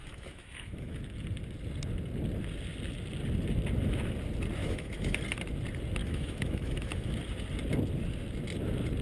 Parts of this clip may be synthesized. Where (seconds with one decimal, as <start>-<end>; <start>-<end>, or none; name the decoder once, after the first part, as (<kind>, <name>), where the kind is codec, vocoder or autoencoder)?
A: 0.0-1.0 (autoencoder, DAC-VAE); 4.6-5.2; 6.0-7.2